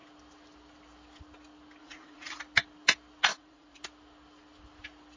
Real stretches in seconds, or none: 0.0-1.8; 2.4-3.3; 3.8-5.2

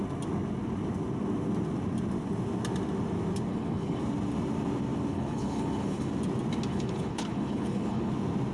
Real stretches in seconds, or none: 0.0-3.5; 4.0-5.1; 6.1-6.7; 8.1-8.5

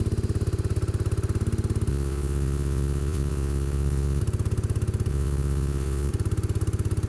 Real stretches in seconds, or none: 0.0-1.9; 4.2-5.1; 6.1-7.1

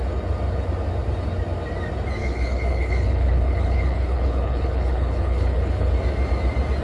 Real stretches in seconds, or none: 0.0-2.2; 5.9-6.8

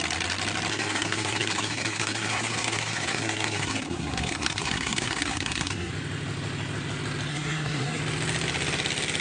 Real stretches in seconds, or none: 0.0-0.7; 5.9-7.3; 8.0-9.2

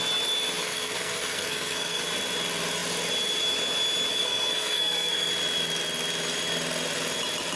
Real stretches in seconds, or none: 0.0-0.6; 2.0-4.1; 5.3-7.6

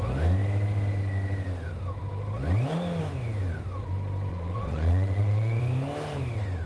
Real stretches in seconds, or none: 0.0-4.3; 5.6-6.7

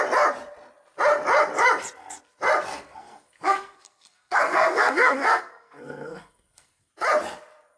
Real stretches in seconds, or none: 0.0-2.7; 6.9-7.8